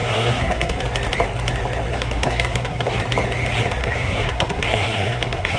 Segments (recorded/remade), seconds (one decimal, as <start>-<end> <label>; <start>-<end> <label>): 0.0-0.8 remade; 0.8-1.9 recorded; 1.9-3.0 remade; 3.0-3.8 recorded; 3.8-5.6 remade